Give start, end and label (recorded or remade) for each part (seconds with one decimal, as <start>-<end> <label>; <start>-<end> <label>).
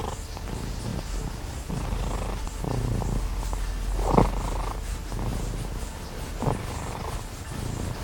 0.0-8.0 recorded